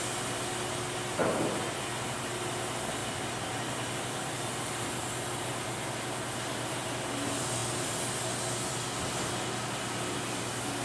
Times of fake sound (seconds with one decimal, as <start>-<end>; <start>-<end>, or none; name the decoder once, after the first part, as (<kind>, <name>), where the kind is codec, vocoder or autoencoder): 3.0-4.5 (vocoder, BigVGAN v2)